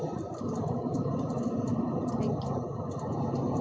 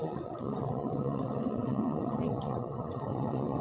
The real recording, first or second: first